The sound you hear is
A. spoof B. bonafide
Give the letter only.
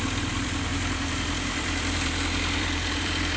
A